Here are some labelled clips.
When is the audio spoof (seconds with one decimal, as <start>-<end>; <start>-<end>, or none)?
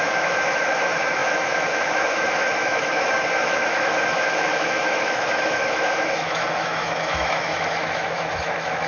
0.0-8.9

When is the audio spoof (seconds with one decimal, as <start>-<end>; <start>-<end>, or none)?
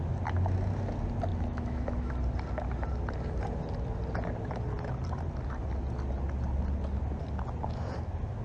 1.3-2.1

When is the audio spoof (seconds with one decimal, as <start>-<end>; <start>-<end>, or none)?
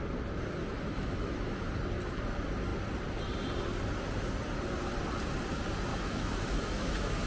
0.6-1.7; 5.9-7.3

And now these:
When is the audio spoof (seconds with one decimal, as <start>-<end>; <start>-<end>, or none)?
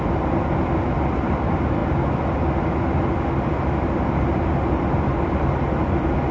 none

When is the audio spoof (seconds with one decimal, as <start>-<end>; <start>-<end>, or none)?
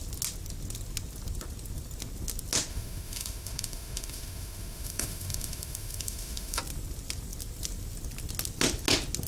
2.7-6.6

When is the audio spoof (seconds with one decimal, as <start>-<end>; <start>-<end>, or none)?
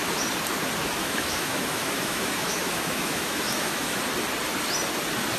1.0-4.0